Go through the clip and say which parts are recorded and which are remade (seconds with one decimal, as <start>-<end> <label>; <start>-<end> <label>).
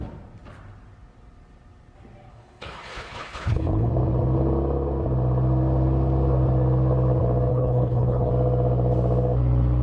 0.0-2.3 recorded; 2.3-3.9 remade; 3.9-7.5 recorded; 7.5-8.3 remade; 8.3-9.8 recorded